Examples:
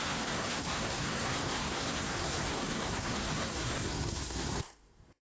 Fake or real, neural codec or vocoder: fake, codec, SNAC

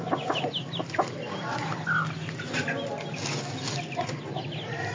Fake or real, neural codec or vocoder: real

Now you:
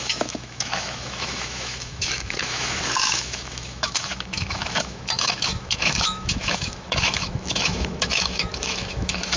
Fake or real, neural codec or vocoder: fake, autoencoder, DAC-VAE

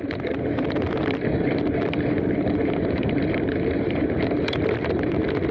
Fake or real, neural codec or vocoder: fake, vocoder, BigVGAN v2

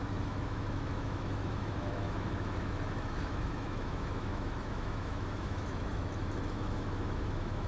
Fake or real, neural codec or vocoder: fake, autoencoder, DAC-VAE